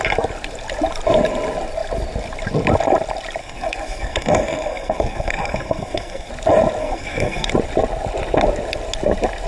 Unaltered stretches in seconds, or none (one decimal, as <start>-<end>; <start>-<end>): 0.0-3.4; 6.3-6.8; 7.5-9.5